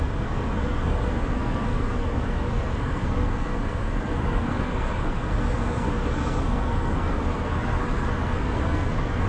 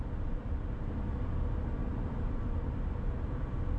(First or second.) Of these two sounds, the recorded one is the second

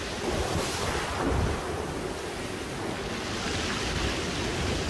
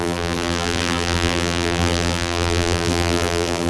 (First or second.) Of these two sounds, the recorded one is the first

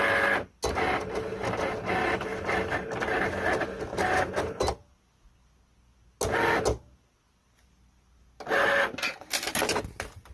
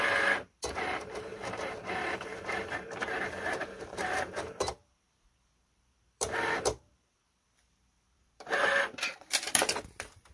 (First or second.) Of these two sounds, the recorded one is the first